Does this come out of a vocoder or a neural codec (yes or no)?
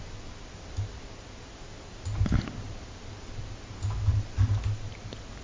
no